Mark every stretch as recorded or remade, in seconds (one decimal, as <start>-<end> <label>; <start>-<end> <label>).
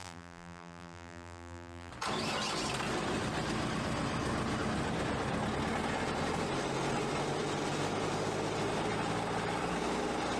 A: 0.0-1.9 remade; 1.9-10.4 recorded